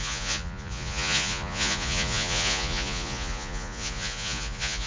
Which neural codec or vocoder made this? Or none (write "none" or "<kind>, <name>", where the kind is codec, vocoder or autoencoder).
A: vocoder, Vocos